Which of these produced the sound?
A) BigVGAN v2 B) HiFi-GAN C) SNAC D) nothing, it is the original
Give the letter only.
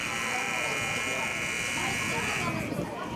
D